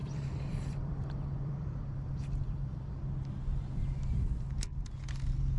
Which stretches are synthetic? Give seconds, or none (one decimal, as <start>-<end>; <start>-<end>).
0.0-3.0